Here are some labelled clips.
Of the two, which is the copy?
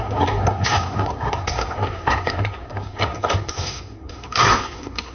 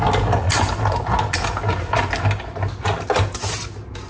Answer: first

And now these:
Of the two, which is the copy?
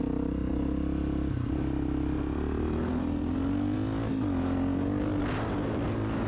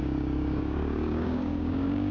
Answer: second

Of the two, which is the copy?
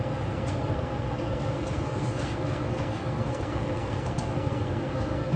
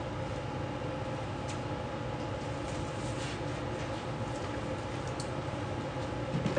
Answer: first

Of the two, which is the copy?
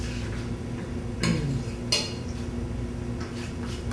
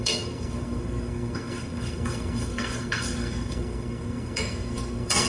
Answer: second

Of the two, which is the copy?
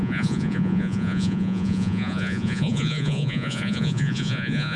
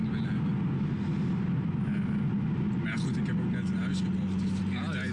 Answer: first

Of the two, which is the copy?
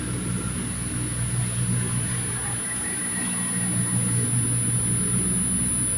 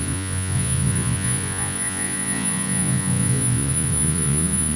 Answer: second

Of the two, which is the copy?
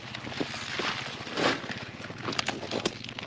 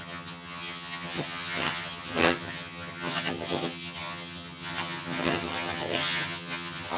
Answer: second